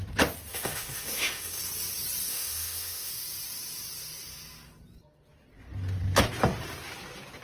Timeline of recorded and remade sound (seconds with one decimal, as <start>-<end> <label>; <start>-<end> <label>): 0.0-0.5 recorded; 0.5-1.6 remade; 1.6-2.3 recorded; 2.3-3.1 remade; 3.1-7.4 recorded